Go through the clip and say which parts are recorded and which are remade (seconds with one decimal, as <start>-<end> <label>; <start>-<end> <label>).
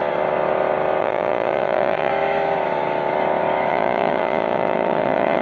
0.0-1.0 recorded; 1.0-2.1 remade; 2.1-3.7 recorded; 3.7-5.4 remade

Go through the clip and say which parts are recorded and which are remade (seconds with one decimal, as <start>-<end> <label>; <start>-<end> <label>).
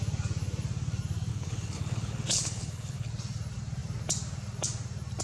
0.0-1.3 recorded; 1.3-3.1 remade; 3.1-5.2 recorded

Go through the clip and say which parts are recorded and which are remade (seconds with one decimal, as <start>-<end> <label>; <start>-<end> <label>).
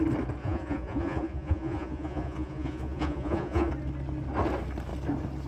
0.0-0.4 recorded; 0.4-3.7 remade; 3.7-5.5 recorded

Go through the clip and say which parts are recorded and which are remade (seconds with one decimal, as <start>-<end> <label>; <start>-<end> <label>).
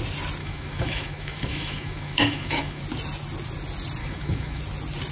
0.0-0.4 recorded; 0.4-2.8 remade; 2.8-4.0 recorded; 4.0-4.6 remade; 4.6-5.1 recorded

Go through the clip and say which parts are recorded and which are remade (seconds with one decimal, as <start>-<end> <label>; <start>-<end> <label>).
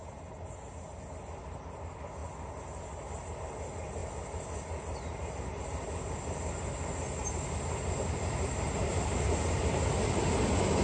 0.0-10.8 recorded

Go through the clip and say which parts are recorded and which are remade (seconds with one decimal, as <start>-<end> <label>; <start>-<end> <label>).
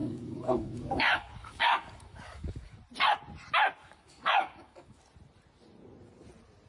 0.0-2.8 remade; 2.8-3.8 recorded; 3.8-5.0 remade; 5.0-6.7 recorded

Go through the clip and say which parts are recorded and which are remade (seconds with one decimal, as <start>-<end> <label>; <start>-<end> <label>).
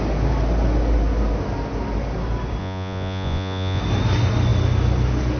0.0-2.6 recorded; 2.6-3.8 remade; 3.8-5.4 recorded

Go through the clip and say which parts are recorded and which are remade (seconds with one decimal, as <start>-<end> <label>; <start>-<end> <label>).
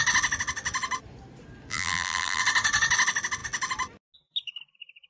0.0-1.7 recorded; 1.7-2.4 remade; 2.4-5.1 recorded